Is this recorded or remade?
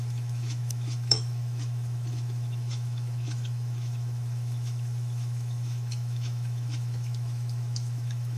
remade